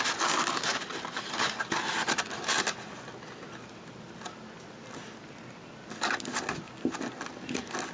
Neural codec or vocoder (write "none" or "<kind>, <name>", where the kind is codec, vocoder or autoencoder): none